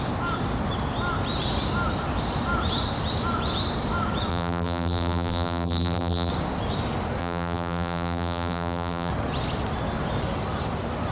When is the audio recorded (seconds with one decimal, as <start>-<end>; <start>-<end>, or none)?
0.0-4.3; 6.3-7.2; 9.1-11.1